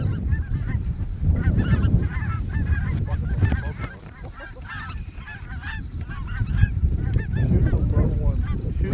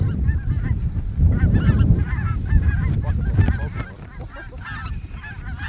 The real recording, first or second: second